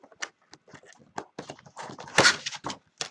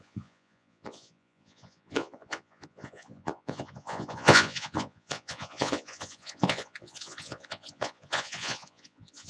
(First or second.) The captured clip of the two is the first